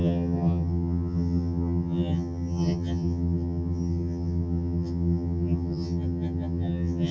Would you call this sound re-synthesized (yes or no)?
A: yes